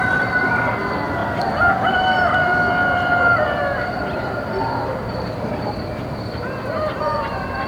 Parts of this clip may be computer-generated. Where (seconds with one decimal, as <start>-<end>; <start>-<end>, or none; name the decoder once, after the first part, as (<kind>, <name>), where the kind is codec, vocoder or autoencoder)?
none